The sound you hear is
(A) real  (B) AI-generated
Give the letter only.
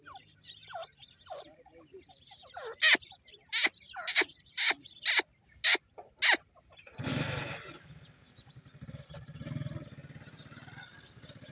A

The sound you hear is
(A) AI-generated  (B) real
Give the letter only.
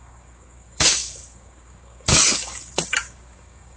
A